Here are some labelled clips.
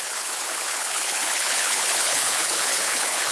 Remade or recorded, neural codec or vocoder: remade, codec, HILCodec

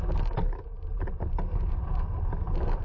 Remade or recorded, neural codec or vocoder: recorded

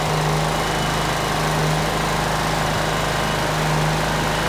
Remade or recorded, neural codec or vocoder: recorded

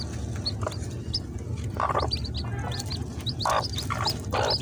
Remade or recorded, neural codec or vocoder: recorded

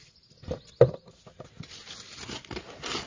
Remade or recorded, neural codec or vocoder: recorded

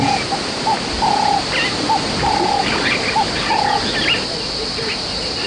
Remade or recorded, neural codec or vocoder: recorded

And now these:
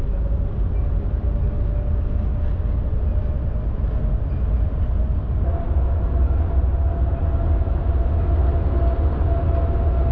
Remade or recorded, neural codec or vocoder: recorded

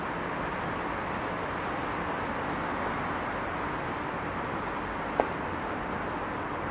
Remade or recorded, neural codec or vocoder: recorded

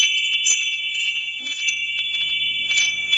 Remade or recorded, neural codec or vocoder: remade, vocoder, WaveNeXt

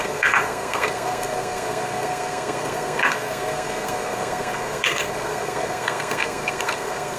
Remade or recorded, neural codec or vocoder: remade, codec, SNAC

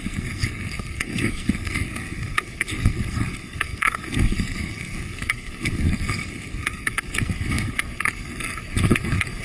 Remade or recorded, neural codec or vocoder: remade, codec, SNAC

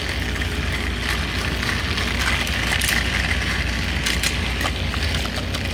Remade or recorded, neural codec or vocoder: recorded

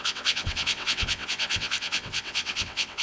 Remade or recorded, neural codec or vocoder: remade, vocoder, WaveNeXt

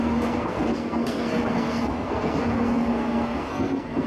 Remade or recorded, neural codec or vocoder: remade, codec, SNAC